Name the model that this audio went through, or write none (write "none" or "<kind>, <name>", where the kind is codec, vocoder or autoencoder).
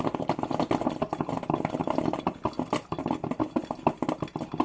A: none